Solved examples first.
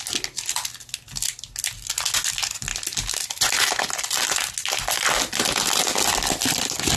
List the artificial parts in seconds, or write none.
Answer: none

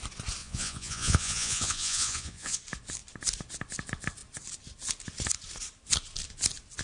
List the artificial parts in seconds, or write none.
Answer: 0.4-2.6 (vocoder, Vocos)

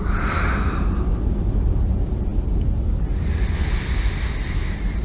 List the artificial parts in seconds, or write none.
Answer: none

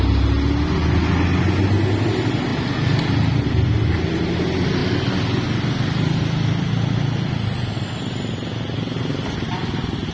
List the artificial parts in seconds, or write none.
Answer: none